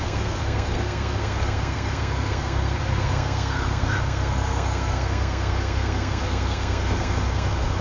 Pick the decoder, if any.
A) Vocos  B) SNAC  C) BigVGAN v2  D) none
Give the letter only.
B